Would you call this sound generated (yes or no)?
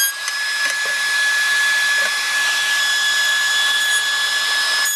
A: no